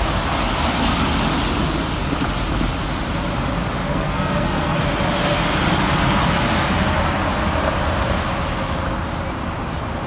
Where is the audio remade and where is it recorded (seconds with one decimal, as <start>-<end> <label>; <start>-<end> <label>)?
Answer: 0.0-3.8 recorded; 3.8-4.8 remade; 4.8-10.1 recorded